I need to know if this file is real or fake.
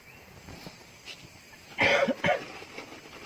real